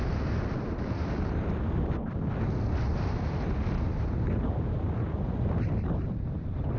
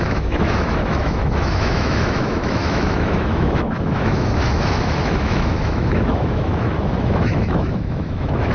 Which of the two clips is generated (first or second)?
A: second